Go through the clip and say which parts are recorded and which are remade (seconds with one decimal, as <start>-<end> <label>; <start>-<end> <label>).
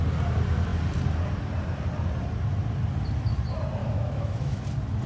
0.0-3.8 recorded; 3.8-4.6 remade; 4.6-5.1 recorded